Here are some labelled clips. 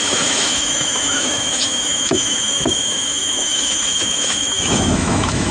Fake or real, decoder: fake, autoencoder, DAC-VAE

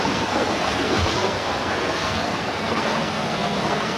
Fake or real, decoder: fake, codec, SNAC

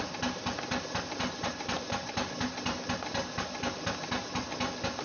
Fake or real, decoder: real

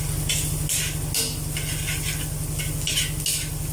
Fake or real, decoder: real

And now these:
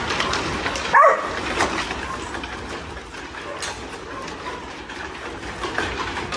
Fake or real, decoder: real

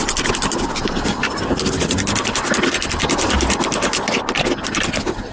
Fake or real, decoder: real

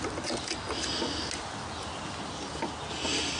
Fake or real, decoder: real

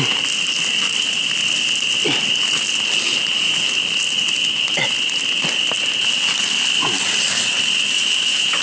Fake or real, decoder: real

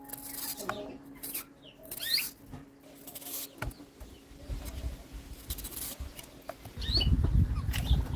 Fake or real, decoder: real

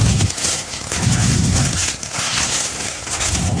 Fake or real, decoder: fake, codec, SNAC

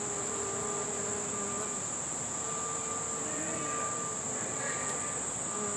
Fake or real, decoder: real